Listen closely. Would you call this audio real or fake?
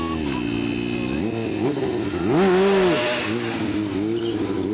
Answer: real